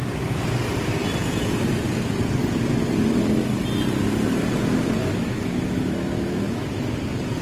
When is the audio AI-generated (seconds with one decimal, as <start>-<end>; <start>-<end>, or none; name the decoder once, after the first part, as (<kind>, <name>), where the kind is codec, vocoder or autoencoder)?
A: 5.0-6.8 (autoencoder, DAC-VAE)